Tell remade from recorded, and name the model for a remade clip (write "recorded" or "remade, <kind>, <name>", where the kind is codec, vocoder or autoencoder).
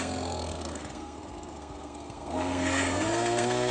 remade, codec, SNAC